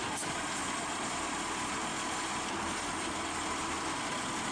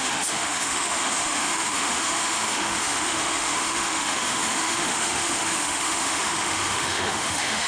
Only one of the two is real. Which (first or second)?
first